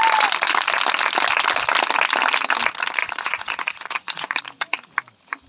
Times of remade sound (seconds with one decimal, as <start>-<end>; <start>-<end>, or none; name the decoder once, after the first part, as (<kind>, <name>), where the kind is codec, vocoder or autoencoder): 3.0-4.4 (vocoder, Vocos)